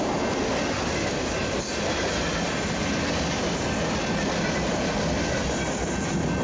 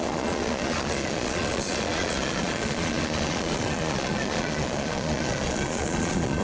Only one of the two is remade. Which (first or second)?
second